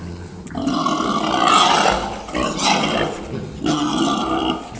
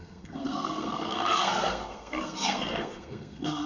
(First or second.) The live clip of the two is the first